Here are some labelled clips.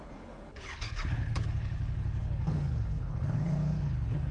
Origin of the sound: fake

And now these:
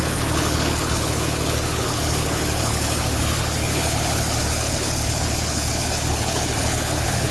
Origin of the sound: fake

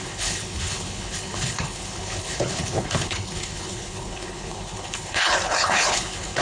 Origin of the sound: fake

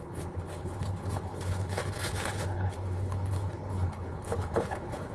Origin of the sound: fake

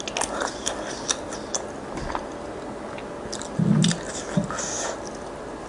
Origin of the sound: real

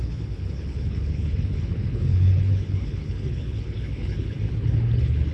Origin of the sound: fake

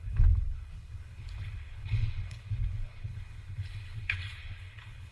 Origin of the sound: fake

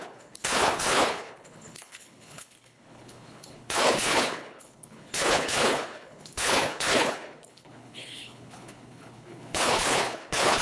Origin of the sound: fake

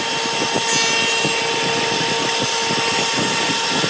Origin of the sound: real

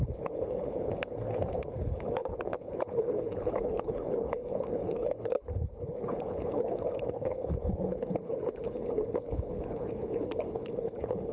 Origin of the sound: fake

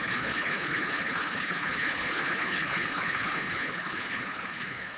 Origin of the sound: fake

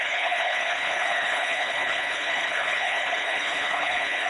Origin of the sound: fake